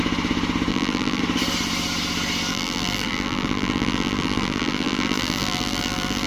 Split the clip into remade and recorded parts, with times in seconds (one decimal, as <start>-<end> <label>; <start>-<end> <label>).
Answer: 0.0-0.7 recorded; 0.7-1.2 remade; 1.2-2.5 recorded; 2.5-6.3 remade